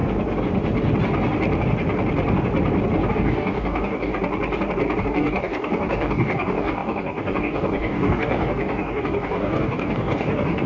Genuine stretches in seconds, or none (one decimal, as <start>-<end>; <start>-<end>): 0.0-3.1; 4.1-5.0